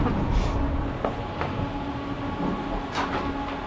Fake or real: real